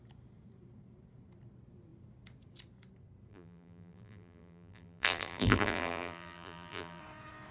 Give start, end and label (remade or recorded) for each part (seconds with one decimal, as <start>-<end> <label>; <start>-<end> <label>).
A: 0.0-3.3 recorded; 3.3-7.0 remade; 7.0-7.5 recorded

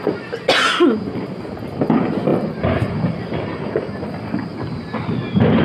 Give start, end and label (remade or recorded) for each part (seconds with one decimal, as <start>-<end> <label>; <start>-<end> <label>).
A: 0.0-2.3 recorded; 2.3-2.9 remade; 2.9-4.5 recorded; 4.5-5.1 remade; 5.1-5.6 recorded

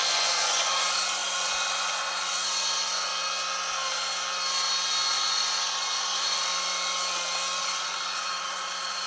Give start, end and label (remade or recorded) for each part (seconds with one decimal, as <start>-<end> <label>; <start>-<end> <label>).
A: 0.0-3.1 remade; 3.1-5.1 recorded; 5.1-6.5 remade; 6.5-7.6 recorded; 7.6-9.1 remade